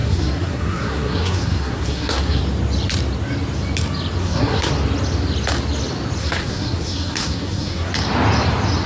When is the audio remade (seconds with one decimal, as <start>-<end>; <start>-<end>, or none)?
0.0-2.4; 4.2-4.7; 6.2-7.9